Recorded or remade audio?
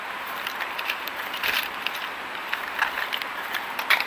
recorded